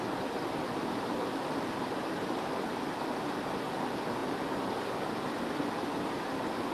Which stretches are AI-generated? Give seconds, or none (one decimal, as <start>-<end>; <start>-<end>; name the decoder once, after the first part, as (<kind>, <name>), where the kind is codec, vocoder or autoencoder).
none